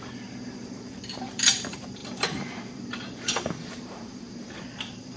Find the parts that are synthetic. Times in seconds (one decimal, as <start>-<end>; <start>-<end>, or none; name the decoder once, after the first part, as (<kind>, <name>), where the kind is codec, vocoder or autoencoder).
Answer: 0.0-5.2 (vocoder, BigVGAN v2)

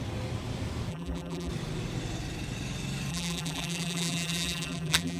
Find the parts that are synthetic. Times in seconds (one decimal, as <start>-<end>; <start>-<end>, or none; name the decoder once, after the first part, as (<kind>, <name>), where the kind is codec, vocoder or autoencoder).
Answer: 0.9-1.5 (vocoder, BigVGAN v2); 3.1-5.2

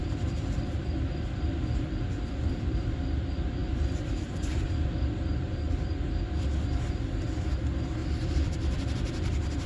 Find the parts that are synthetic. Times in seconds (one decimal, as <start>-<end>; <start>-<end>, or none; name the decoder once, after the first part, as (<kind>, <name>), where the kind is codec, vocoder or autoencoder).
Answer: 0.0-9.7 (vocoder, BigVGAN v2)

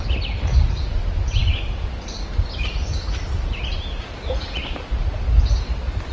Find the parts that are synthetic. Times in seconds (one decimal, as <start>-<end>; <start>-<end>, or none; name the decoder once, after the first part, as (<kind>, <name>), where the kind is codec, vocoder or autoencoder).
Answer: none

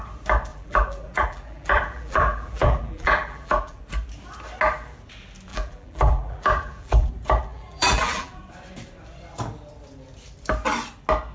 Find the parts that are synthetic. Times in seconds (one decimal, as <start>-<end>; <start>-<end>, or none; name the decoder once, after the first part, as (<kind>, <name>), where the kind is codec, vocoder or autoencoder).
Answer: 0.5-3.8 (vocoder, BigVGAN v2); 5.5-7.1; 7.5-8.4

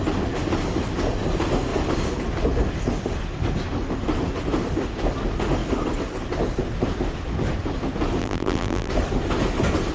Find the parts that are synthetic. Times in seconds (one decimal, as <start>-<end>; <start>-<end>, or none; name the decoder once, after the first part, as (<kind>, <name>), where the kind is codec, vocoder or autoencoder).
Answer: 8.2-8.9 (vocoder, BigVGAN v2)

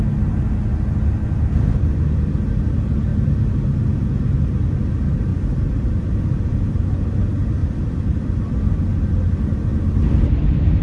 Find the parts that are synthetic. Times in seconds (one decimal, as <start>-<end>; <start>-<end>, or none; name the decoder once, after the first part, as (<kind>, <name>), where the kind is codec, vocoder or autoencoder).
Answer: 3.1-3.8 (vocoder, BigVGAN v2); 5.3-6.5; 7.6-8.5; 9.7-10.8

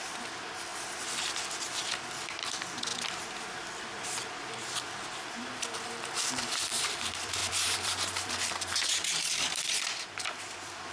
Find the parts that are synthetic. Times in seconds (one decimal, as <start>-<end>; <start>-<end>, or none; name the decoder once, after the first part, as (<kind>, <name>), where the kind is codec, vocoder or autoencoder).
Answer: 0.0-10.9 (vocoder, BigVGAN v2)